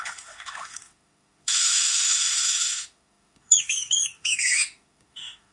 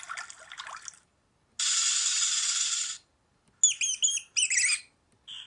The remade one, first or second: first